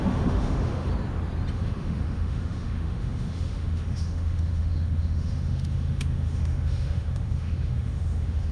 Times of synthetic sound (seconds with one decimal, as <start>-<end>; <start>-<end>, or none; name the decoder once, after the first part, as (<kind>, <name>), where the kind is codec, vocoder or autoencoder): 0.0-0.9 (autoencoder, DAC-VAE); 1.5-8.5